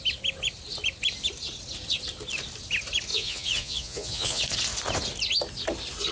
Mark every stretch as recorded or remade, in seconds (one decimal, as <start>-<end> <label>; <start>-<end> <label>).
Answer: 0.0-3.1 recorded; 3.1-4.4 remade; 4.4-6.1 recorded